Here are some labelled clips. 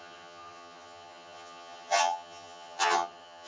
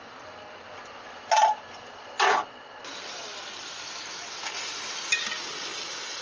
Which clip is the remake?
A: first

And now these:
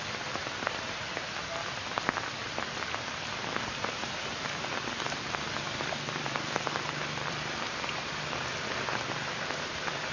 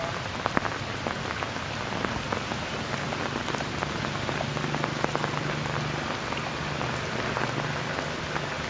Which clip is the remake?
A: first